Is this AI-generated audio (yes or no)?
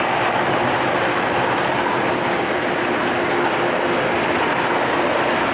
no